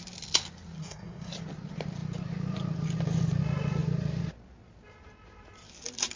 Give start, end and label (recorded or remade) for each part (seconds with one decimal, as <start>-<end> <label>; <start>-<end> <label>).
0.0-0.8 recorded; 0.8-1.3 remade; 1.3-6.2 recorded